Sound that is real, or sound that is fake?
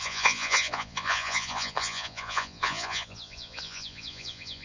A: fake